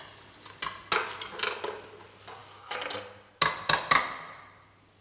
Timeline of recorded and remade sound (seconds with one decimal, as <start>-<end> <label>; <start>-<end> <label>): 0.0-5.0 recorded